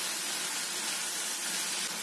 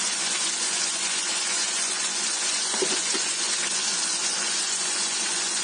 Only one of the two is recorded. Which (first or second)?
first